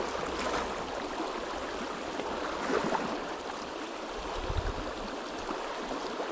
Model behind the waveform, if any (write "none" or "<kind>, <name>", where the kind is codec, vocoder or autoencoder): none